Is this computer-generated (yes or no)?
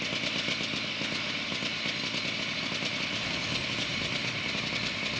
no